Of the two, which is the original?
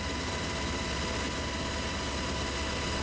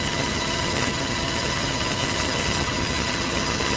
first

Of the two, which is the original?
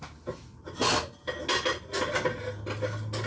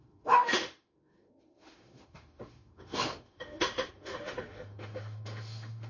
first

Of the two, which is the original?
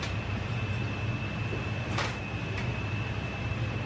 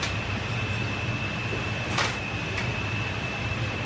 first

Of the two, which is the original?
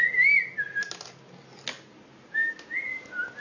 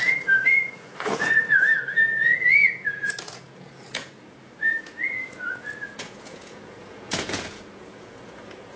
first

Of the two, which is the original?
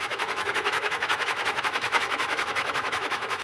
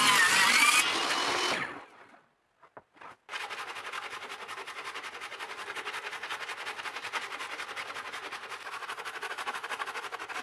second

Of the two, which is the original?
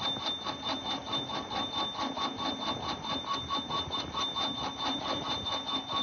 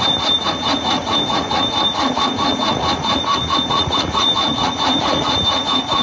first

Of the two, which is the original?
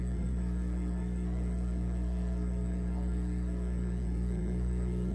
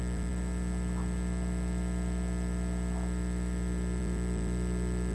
second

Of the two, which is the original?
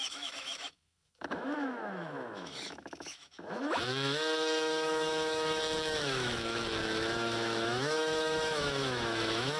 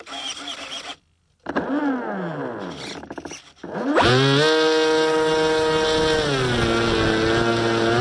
second